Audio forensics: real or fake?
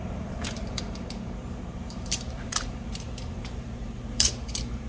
fake